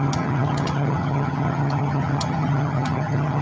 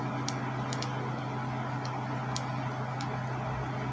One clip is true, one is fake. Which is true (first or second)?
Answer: second